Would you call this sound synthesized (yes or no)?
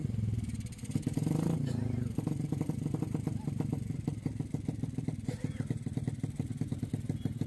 yes